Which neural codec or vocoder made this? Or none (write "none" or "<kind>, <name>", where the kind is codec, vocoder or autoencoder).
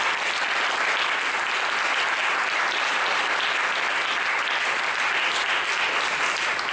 none